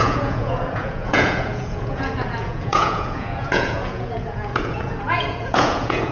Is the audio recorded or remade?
remade